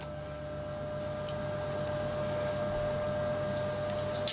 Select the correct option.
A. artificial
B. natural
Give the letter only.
B